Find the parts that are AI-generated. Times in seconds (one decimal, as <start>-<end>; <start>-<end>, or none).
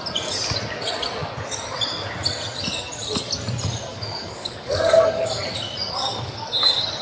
3.9-5.3; 6.1-7.0